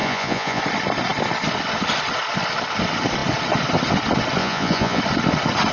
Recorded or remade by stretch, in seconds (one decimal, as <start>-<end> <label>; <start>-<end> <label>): 0.0-0.6 remade; 0.6-4.4 recorded; 4.4-5.0 remade; 5.0-5.7 recorded